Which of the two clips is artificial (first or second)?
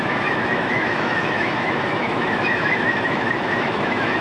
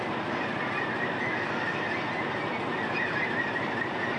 first